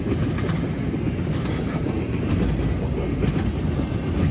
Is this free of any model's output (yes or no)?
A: yes